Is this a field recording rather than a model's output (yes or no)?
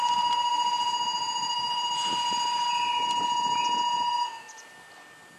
yes